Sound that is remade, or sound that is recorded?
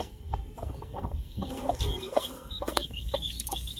remade